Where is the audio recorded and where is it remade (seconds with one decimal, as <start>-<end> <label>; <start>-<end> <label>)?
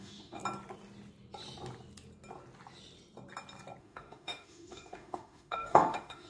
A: 0.0-0.4 remade; 0.4-3.8 recorded; 3.8-6.3 remade